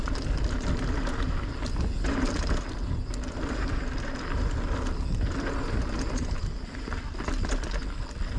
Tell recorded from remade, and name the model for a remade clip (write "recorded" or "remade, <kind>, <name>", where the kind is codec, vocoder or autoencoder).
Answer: recorded